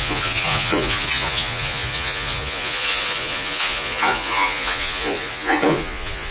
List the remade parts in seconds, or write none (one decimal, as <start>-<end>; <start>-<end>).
0.0-6.3